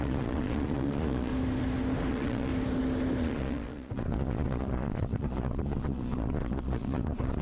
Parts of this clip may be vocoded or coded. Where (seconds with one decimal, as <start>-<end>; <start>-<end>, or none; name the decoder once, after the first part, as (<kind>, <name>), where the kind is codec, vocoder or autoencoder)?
0.0-1.3 (vocoder, Vocos); 2.1-2.5; 3.2-7.4